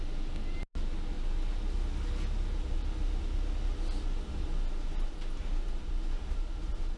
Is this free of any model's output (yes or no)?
yes